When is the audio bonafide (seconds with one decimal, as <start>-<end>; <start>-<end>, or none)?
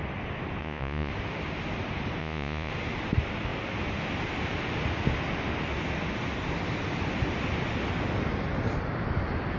0.0-0.6; 1.1-2.2; 2.7-9.6